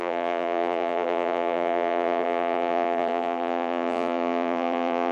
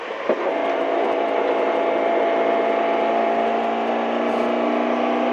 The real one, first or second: second